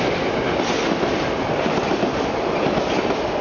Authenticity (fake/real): real